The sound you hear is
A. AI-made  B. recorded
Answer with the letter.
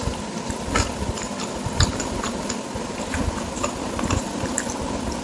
B